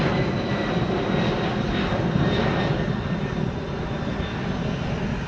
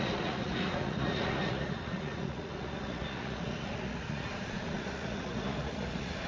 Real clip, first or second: first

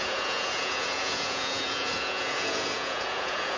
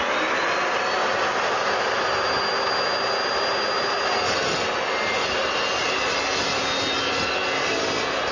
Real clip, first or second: second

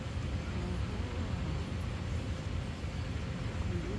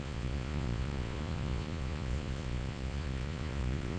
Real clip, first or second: first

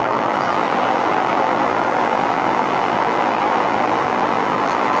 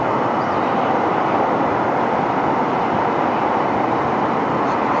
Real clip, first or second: second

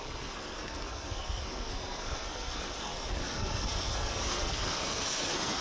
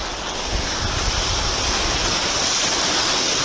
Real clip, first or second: second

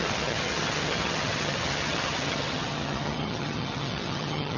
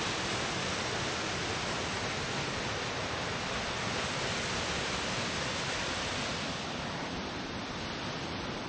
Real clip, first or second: second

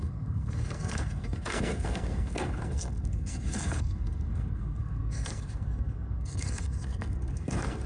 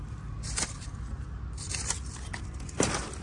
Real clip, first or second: second